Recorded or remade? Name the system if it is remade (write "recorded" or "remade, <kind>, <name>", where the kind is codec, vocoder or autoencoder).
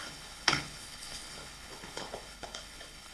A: remade, codec, HILCodec